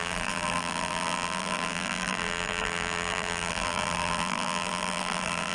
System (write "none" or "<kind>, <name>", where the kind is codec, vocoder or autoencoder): vocoder, BigVGAN v2